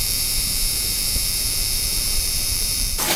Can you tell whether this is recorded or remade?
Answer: remade